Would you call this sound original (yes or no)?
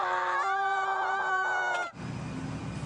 yes